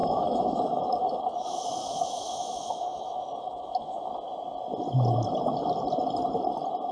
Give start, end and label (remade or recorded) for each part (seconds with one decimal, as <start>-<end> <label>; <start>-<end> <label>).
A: 0.0-4.1 remade; 4.1-6.9 recorded